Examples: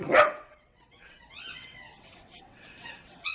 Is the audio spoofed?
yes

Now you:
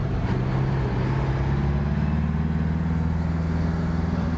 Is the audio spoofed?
no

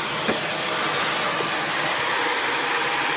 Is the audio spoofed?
no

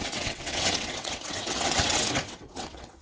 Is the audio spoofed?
yes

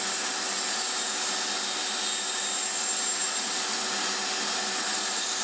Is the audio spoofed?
no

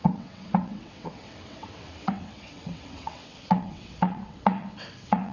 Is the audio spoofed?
yes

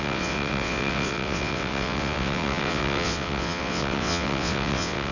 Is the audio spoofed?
yes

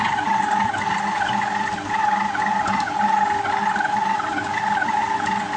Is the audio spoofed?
no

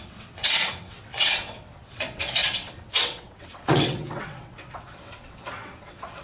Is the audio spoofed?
yes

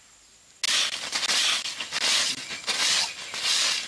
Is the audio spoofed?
no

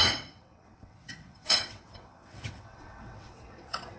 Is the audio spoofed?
yes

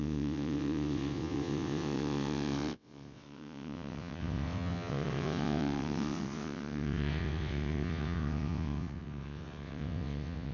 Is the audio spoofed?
yes